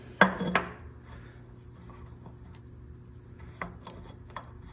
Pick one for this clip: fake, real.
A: real